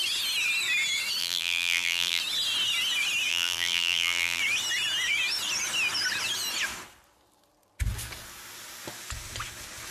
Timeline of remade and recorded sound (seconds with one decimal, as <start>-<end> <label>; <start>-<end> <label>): 0.0-1.2 recorded; 1.2-2.2 remade; 2.2-3.3 recorded; 3.3-4.4 remade; 4.4-9.9 recorded